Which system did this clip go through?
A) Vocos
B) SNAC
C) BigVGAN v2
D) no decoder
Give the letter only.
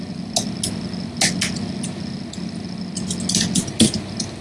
D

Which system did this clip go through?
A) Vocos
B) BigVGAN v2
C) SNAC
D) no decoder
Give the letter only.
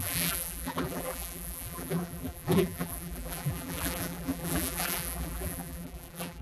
B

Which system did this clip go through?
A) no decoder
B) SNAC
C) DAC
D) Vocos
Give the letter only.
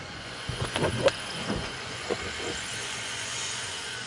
D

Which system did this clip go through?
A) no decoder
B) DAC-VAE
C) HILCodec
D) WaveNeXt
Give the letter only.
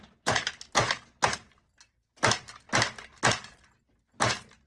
A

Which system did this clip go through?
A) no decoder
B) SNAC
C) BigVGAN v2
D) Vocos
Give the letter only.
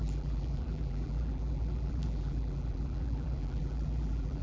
C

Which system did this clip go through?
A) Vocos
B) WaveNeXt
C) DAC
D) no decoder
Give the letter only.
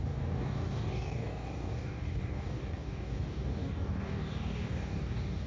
C